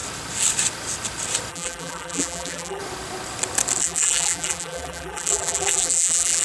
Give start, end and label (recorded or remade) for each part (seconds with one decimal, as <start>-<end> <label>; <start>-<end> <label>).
0.0-1.5 recorded; 1.5-2.8 remade; 2.8-3.8 recorded; 3.8-6.4 remade

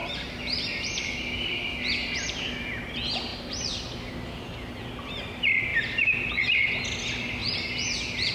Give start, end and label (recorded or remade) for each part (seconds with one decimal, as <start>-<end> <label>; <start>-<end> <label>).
0.0-2.3 remade; 2.3-3.3 recorded; 3.3-4.1 remade; 4.1-5.7 recorded; 5.7-6.8 remade; 6.8-8.3 recorded